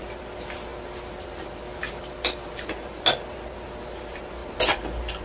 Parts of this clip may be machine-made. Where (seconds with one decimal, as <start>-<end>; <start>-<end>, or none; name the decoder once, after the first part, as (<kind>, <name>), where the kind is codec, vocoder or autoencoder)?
none